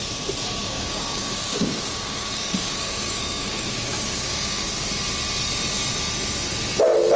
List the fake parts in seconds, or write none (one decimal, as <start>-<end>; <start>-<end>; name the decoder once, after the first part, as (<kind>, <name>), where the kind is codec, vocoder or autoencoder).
0.6-4.9 (codec, DAC)

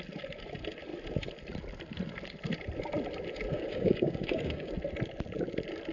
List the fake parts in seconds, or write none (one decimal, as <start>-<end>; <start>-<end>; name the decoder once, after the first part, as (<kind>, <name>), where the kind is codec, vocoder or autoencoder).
3.5-4.7 (codec, DAC)

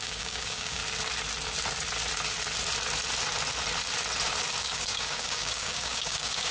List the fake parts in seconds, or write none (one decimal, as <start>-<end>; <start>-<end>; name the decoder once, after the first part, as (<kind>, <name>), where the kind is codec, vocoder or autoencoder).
0.0-0.8 (codec, DAC); 4.6-6.5

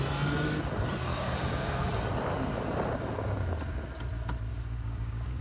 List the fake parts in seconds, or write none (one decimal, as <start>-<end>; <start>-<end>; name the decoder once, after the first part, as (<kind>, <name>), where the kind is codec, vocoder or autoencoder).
1.1-2.0 (codec, DAC); 4.5-5.4

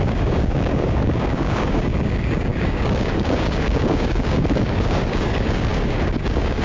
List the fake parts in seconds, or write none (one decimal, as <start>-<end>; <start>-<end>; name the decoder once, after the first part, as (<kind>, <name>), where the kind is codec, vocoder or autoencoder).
0.0-6.6 (codec, DAC)